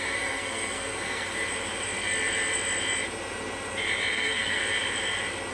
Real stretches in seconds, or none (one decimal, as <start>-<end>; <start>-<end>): 1.3-4.1; 4.6-5.5